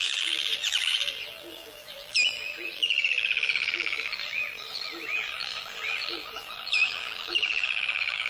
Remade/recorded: remade